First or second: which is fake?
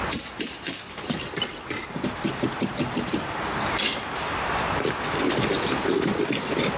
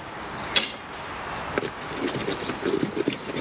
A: first